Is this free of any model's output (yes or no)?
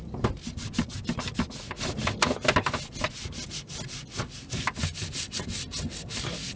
yes